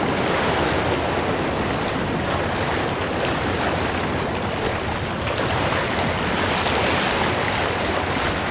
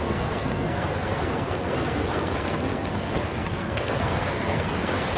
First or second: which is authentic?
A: first